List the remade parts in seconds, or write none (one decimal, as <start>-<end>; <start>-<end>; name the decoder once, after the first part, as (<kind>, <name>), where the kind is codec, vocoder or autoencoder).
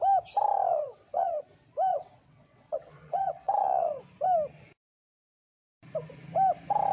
0.7-1.4 (vocoder, WaveNeXt); 1.9-4.0